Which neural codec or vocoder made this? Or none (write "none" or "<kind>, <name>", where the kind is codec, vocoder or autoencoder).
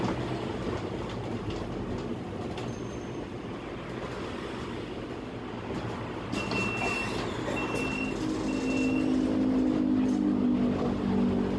none